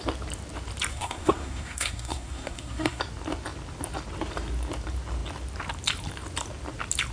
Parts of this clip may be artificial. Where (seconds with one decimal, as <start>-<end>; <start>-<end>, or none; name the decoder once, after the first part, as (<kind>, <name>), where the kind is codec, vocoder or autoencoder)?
0.9-3.0 (codec, SNAC)